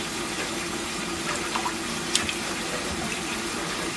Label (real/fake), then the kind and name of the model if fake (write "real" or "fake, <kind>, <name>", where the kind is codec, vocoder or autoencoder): real